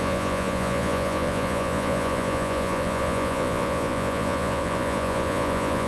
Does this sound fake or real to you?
fake